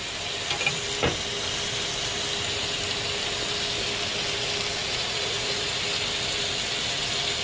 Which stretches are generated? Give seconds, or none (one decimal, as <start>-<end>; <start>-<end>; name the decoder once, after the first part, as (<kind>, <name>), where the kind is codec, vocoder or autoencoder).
4.8-5.8 (vocoder, Vocos)